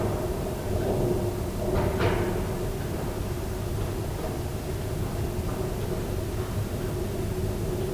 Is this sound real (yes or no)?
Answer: yes